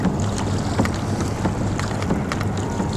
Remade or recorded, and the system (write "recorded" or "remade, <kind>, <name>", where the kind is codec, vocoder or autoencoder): recorded